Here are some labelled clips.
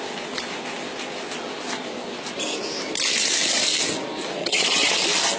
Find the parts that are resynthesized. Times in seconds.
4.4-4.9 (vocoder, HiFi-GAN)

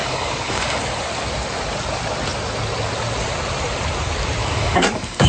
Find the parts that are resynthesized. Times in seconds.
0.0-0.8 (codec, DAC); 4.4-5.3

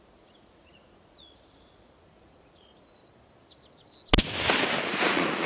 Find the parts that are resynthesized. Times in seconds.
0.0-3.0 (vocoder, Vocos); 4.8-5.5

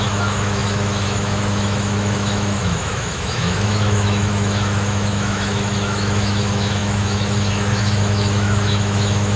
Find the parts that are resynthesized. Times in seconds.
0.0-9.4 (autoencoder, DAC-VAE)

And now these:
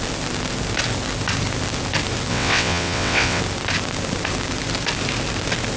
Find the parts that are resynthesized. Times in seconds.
2.3-3.4 (vocoder, WaveNeXt)